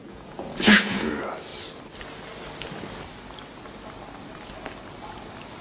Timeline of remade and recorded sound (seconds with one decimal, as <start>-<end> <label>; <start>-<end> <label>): 0.0-1.1 remade; 1.1-5.6 recorded